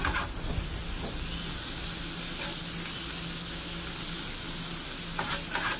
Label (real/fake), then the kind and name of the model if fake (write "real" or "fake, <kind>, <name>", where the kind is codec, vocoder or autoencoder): real